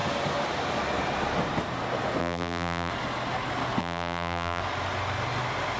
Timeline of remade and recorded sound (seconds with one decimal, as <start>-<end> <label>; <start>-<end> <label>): 0.0-2.2 recorded; 2.2-2.9 remade; 2.9-3.8 recorded; 3.8-4.6 remade; 4.6-5.8 recorded